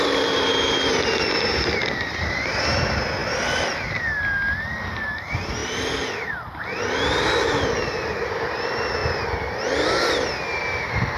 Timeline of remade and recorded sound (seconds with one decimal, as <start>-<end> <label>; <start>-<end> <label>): 0.0-11.2 recorded